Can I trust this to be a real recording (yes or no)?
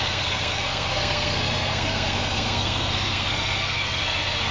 no